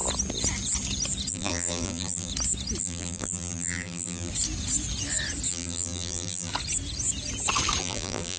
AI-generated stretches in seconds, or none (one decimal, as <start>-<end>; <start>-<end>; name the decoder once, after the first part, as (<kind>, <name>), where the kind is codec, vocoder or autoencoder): 1.3-2.3 (vocoder, BigVGAN v2); 2.8-4.3; 5.5-6.5; 7.8-8.4